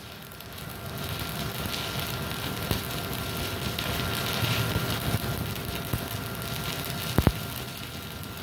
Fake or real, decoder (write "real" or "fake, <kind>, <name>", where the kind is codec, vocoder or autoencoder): real